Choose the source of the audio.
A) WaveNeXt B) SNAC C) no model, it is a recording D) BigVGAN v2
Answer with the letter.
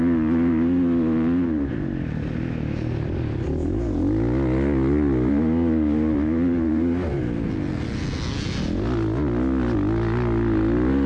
C